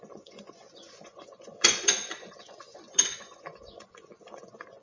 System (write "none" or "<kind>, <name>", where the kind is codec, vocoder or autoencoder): vocoder, Vocos